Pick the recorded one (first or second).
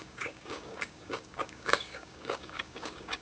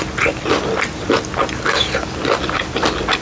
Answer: second